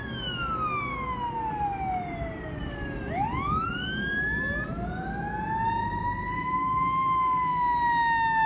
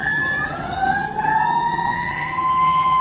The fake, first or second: second